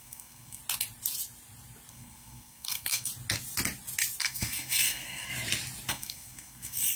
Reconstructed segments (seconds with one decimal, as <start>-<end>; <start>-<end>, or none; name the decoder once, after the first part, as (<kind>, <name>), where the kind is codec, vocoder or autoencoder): 0.0-0.6 (codec, SNAC); 1.9-3.1; 4.2-5.3; 5.9-7.0